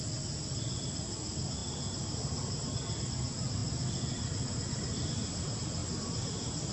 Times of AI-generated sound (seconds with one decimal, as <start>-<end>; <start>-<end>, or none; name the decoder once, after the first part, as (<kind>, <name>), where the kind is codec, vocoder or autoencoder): 1.6-3.0 (vocoder, BigVGAN v2); 5.8-6.7